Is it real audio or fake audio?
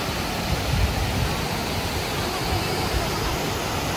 real